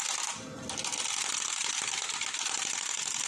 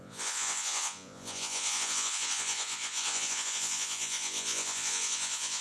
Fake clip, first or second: second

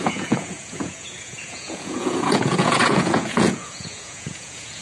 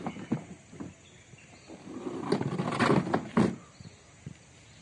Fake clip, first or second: first